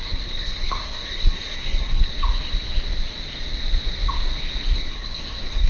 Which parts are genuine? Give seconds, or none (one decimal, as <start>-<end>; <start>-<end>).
2.1-4.7